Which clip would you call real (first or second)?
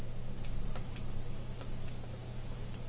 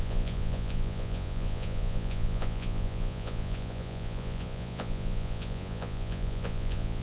first